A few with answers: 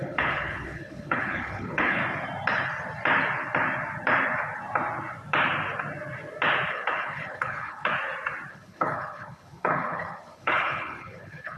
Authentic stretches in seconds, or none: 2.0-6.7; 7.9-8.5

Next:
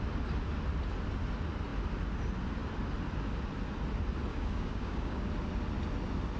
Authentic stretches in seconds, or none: 0.0-4.3; 5.3-6.4

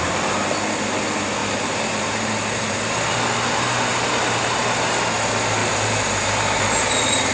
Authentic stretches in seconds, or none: 0.0-1.4; 3.1-4.0; 5.0-5.6; 6.6-7.3

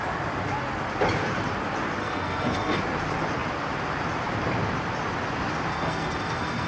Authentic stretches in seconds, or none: 0.0-2.0; 2.8-5.7

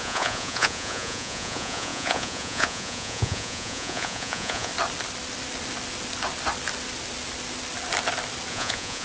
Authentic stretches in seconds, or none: 4.7-8.5

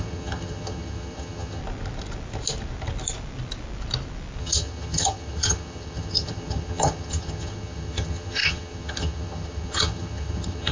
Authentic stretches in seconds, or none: 1.6-4.4

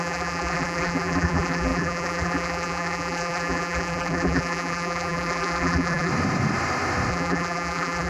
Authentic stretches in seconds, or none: 6.1-7.1